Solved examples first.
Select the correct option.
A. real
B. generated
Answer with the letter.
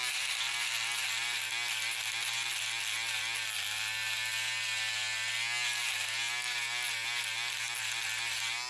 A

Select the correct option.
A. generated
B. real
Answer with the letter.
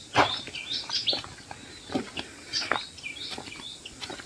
A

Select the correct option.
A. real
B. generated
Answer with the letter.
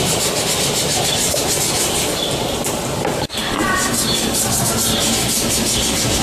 A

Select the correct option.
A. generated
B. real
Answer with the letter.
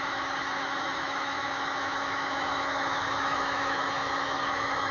A